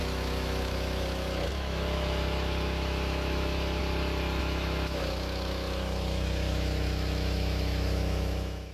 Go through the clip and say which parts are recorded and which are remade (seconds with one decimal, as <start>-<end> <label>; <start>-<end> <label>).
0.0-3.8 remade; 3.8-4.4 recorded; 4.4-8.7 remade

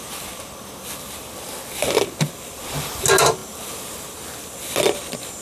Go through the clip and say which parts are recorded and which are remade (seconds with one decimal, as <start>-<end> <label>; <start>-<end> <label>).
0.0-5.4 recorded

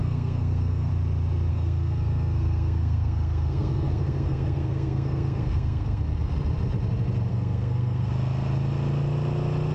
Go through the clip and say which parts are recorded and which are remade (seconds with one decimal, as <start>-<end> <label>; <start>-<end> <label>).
0.0-0.9 remade; 0.9-1.5 recorded; 1.5-6.0 remade; 6.0-7.3 recorded; 7.3-8.1 remade; 8.1-9.7 recorded

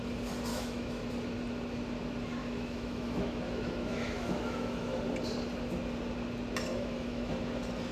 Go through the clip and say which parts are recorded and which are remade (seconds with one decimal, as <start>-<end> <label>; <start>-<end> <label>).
0.0-0.5 recorded; 0.5-1.1 remade; 1.1-2.4 recorded; 2.4-5.0 remade; 5.0-6.7 recorded; 6.7-7.3 remade; 7.3-7.9 recorded